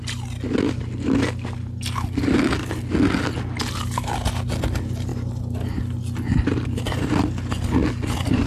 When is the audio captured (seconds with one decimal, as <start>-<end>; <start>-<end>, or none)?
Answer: 0.0-8.5